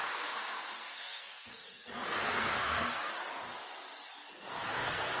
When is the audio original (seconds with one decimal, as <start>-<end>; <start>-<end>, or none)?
3.1-4.2